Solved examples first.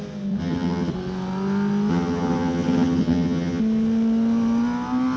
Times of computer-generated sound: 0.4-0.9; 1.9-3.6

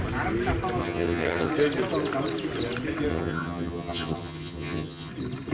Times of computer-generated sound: 0.8-1.5; 3.1-5.1

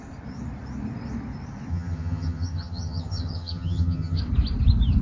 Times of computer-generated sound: 1.7-4.2